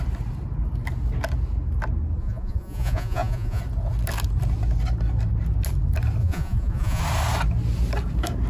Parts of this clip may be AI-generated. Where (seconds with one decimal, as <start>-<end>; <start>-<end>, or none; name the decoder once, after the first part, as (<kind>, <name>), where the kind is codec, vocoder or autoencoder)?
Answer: 2.2-3.6 (vocoder, Vocos); 6.2-7.0